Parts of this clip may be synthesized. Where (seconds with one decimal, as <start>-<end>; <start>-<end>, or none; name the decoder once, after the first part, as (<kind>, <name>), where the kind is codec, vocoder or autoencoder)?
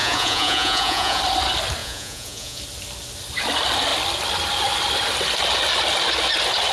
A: 0.0-1.2 (vocoder, Vocos); 1.8-2.6